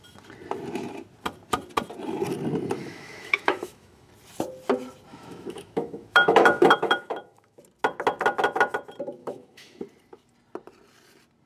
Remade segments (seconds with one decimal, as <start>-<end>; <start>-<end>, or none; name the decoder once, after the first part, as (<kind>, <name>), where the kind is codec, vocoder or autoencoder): 2.8-4.1 (autoencoder, DAC-VAE); 5.1-7.6; 9.2-9.8